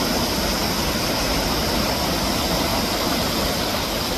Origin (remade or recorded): recorded